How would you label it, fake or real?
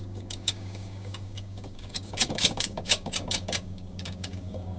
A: fake